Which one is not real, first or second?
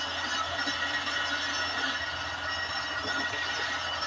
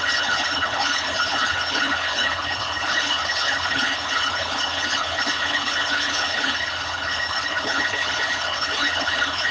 second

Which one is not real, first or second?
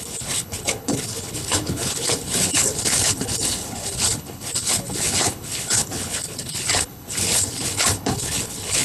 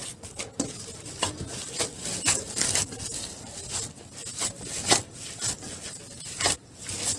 first